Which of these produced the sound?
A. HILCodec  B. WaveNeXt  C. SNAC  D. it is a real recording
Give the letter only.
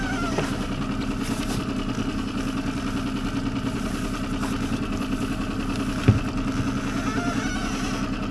D